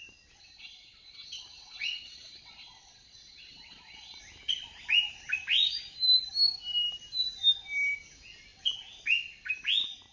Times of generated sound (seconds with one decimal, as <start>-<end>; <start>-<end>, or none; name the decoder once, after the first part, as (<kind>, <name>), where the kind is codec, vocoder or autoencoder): 0.4-4.2 (vocoder, WaveNeXt)